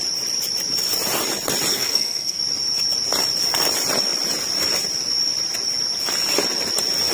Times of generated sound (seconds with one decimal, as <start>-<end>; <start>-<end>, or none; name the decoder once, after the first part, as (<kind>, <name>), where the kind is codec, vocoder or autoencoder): 1.7-2.4 (codec, SNAC)